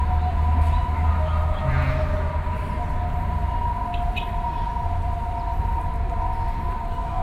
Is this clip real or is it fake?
real